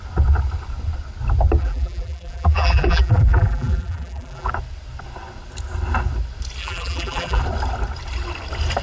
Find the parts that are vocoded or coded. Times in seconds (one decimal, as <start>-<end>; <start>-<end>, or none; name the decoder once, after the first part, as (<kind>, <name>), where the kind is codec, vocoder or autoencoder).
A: 1.6-4.5 (vocoder, BigVGAN v2); 6.6-7.4